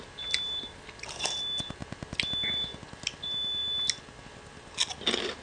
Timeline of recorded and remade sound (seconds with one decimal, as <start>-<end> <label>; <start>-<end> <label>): 0.0-5.4 recorded